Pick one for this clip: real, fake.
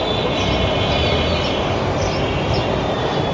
real